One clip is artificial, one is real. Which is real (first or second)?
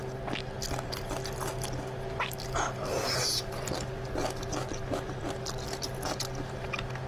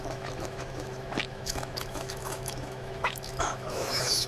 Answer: first